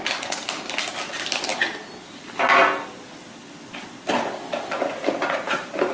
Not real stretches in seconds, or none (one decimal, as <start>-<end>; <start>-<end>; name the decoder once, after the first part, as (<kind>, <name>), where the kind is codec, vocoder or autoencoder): none